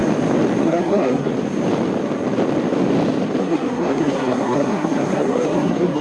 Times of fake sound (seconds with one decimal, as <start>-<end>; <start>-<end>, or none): 0.6-1.3; 3.4-6.0